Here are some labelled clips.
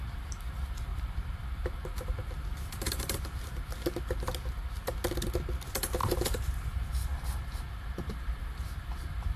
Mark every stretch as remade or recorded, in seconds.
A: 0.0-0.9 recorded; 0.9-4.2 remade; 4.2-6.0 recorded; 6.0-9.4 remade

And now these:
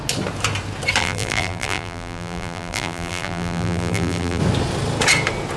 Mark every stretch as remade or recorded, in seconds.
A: 0.0-1.0 recorded; 1.0-4.4 remade; 4.4-5.6 recorded

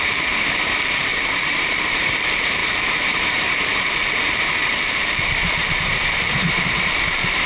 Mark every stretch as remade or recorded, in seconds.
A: 0.0-1.1 remade; 1.1-1.9 recorded; 1.9-7.5 remade

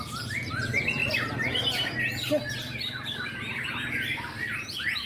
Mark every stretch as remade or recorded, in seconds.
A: 0.0-5.1 recorded